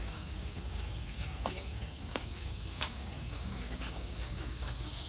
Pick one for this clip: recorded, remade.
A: remade